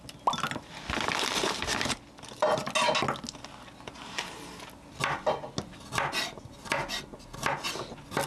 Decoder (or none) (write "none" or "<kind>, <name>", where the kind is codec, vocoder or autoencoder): none